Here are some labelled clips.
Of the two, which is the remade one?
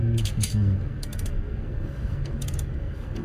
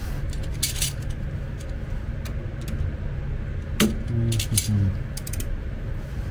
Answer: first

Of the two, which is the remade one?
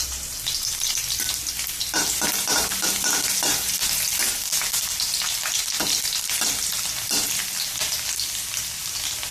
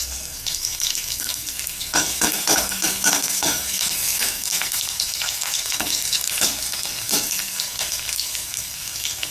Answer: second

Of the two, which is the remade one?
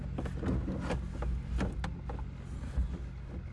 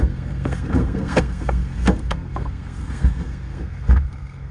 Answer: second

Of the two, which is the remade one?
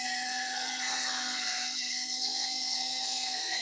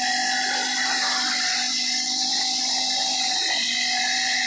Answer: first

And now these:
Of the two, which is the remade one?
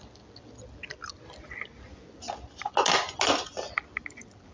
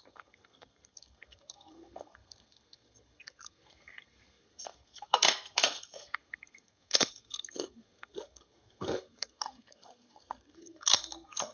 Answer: second